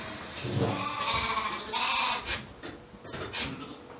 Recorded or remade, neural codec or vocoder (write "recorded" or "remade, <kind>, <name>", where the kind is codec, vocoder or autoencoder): recorded